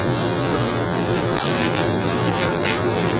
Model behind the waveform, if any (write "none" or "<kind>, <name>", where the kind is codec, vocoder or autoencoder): vocoder, BigVGAN v2